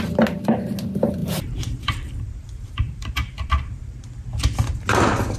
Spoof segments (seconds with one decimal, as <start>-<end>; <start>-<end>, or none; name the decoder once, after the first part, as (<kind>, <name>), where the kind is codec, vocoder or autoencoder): 1.2-3.8 (vocoder, BigVGAN v2)